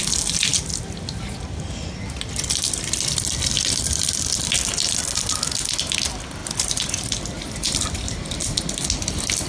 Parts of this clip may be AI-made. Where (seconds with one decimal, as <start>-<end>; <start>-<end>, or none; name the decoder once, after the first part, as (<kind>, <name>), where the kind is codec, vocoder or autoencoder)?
6.4-7.1 (vocoder, BigVGAN v2)